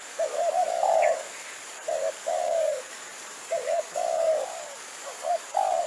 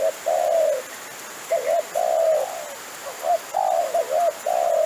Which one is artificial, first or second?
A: first